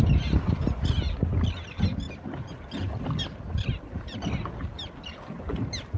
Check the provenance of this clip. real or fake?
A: real